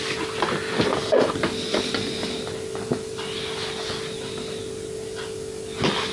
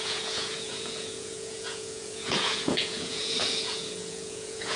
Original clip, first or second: first